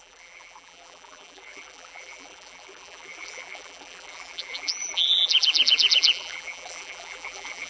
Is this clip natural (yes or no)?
no